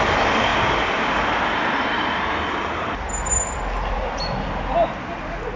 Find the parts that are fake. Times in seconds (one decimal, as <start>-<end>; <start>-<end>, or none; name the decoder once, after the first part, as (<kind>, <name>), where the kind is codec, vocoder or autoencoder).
none